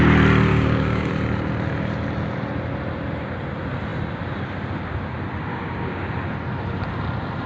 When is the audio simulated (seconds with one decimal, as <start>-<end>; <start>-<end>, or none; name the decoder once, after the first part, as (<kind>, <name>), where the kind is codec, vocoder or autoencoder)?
0.5-1.1 (codec, DAC); 5.5-6.0